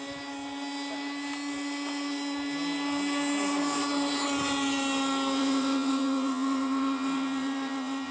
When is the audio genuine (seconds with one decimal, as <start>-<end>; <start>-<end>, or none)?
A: 0.0-5.4